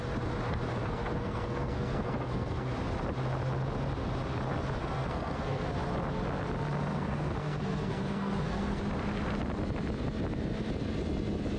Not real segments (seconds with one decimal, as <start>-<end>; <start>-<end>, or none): 0.8-2.7; 4.8-5.7; 6.9-8.8